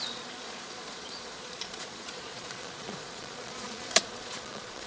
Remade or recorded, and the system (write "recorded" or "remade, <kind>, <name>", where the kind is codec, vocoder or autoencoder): remade, vocoder, Vocos